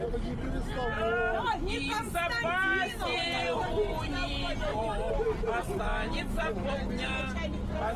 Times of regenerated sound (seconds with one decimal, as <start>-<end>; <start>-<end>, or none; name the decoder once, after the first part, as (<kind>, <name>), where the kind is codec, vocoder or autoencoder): 3.2-3.9 (vocoder, BigVGAN v2); 4.7-5.4